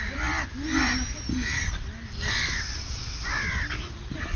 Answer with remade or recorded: recorded